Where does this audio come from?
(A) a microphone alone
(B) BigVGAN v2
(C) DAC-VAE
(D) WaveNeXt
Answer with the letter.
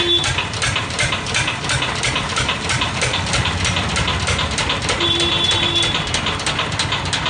A